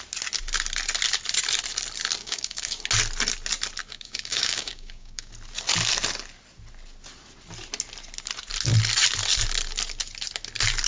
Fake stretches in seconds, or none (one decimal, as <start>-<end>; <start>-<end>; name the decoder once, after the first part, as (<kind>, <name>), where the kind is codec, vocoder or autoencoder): 2.2-2.8 (codec, DAC); 3.8-5.3